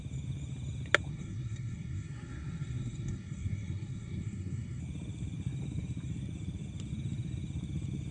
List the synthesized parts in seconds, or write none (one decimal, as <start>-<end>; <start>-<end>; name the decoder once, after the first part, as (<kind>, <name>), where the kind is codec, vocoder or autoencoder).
1.1-4.8 (codec, SNAC)